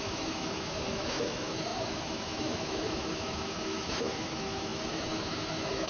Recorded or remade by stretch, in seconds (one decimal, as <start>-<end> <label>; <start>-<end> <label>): 0.0-5.9 remade

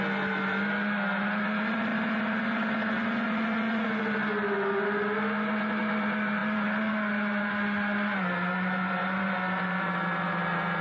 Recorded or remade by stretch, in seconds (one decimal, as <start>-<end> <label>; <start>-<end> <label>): 0.0-10.8 recorded

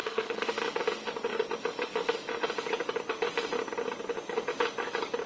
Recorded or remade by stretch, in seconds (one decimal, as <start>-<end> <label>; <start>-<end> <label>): 0.0-0.5 remade; 0.5-5.3 recorded

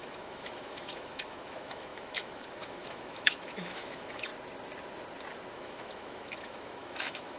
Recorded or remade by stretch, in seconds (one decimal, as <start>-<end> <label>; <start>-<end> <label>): 0.0-4.3 remade; 4.3-5.5 recorded; 5.5-7.4 remade

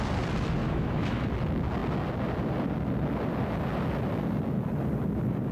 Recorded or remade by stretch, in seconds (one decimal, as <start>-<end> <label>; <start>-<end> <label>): 0.0-0.6 recorded; 0.6-1.2 remade; 1.2-5.5 recorded